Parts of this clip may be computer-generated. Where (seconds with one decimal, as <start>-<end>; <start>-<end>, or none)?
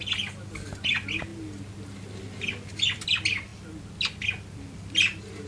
none